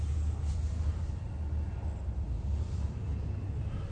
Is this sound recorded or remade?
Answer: recorded